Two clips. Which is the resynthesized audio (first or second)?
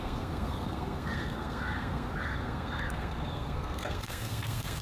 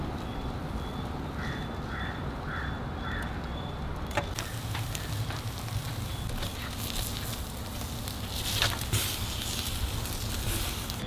first